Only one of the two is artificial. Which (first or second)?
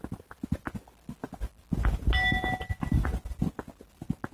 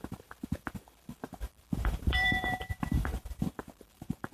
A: second